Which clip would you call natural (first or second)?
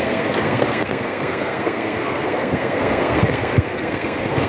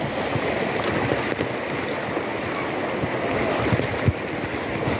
second